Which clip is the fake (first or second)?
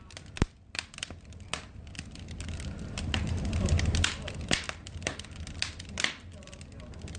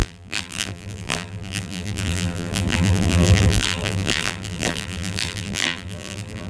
second